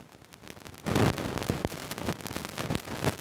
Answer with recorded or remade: recorded